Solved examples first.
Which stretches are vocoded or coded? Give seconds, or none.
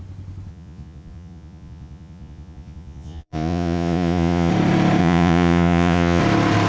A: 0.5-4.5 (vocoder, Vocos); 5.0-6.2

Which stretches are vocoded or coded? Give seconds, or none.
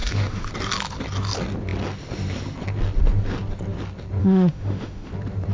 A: 0.0-0.5 (autoencoder, DAC-VAE); 4.2-5.1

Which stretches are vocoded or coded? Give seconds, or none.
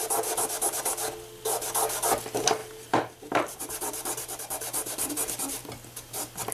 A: 2.6-5.1 (vocoder, BigVGAN v2)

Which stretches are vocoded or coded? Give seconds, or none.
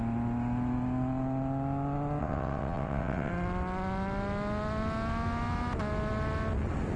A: 2.2-3.3 (vocoder, WaveNeXt)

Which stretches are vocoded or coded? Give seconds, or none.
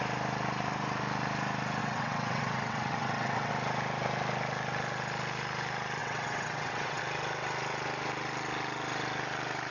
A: 1.8-3.5 (vocoder, WaveNeXt); 6.0-7.0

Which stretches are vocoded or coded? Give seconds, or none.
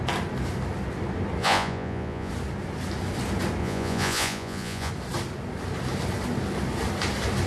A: 1.4-2.3 (vocoder, Vocos); 3.6-4.9